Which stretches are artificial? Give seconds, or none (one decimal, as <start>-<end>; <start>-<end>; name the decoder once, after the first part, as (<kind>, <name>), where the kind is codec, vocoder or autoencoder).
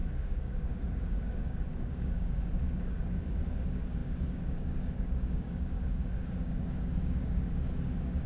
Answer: 0.0-8.3 (codec, DAC)